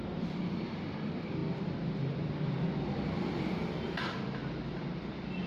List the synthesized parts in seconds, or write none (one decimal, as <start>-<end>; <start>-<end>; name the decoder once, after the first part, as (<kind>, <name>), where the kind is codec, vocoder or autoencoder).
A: 0.0-1.4 (vocoder, BigVGAN v2); 4.7-5.5